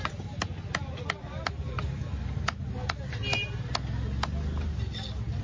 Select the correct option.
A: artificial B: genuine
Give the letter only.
B